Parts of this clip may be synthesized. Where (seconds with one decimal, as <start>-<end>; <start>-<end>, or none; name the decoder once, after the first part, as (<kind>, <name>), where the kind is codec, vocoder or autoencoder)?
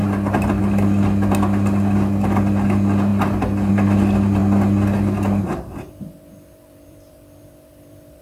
0.0-0.6 (vocoder, BigVGAN v2); 4.4-8.2